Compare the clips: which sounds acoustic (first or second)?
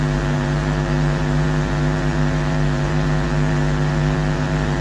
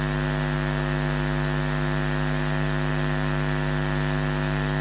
second